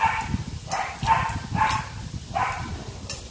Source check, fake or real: real